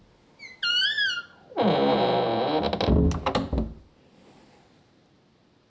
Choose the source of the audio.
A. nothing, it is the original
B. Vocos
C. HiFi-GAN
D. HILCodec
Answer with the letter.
A